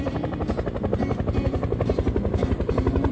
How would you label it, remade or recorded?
remade